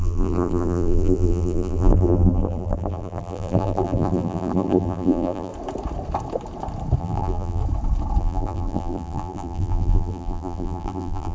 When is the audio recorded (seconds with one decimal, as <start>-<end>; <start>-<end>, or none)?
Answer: 5.5-7.0; 7.6-8.2